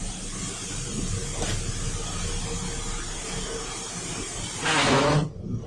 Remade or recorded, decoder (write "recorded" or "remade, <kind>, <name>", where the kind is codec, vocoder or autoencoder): recorded